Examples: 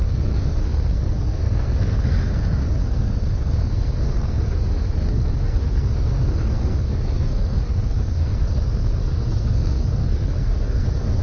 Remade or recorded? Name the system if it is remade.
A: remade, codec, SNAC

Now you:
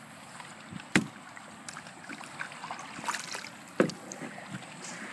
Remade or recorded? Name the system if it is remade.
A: recorded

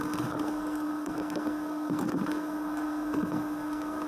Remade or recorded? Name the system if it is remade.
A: remade, codec, SNAC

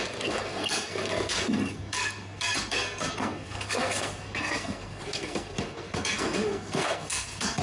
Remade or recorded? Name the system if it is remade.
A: remade, codec, SNAC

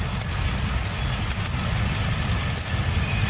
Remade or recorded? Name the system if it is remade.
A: recorded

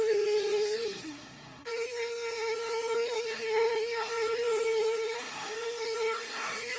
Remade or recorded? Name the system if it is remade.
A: remade, codec, SNAC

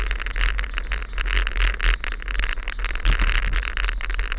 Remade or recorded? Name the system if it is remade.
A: recorded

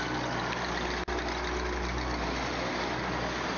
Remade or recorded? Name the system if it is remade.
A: recorded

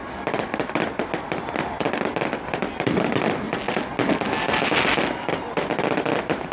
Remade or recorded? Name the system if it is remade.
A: recorded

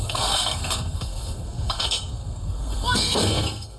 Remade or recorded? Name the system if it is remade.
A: remade, codec, SNAC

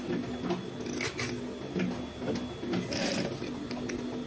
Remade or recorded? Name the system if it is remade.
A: recorded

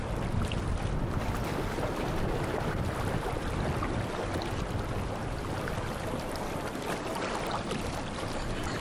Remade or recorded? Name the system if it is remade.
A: recorded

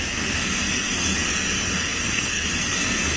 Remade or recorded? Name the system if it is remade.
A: remade, codec, SNAC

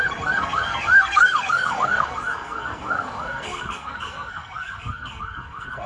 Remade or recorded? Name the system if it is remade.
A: remade, codec, SNAC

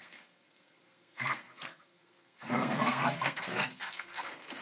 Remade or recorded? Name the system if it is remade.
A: remade, codec, SNAC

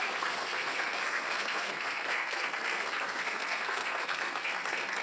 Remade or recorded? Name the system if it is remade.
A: remade, codec, SNAC